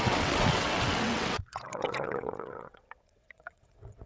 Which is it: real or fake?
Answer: fake